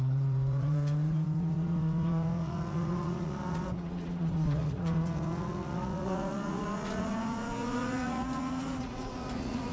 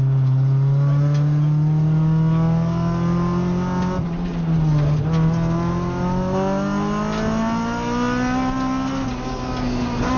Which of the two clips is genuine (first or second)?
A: second